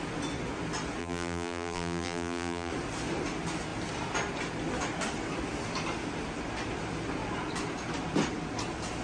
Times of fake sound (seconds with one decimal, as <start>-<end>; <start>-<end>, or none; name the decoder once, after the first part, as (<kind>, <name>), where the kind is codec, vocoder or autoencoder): 1.0-2.7 (vocoder, BigVGAN v2)